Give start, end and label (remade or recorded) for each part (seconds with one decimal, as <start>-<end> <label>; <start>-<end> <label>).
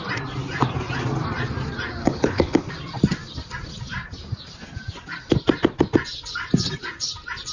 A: 0.0-2.0 recorded; 2.0-2.7 remade; 2.7-7.5 recorded